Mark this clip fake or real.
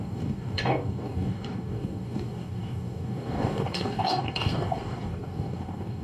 fake